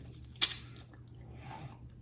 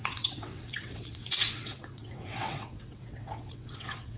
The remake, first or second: second